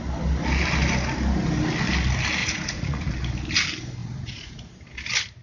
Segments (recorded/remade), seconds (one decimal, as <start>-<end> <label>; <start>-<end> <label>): 0.0-2.4 recorded; 2.4-3.1 remade; 3.1-4.0 recorded; 4.0-4.7 remade; 4.7-5.4 recorded